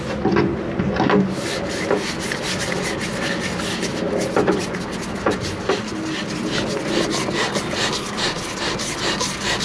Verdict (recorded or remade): recorded